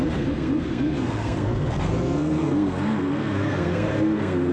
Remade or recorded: remade